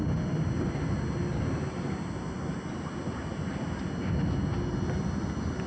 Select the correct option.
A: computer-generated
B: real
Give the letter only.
B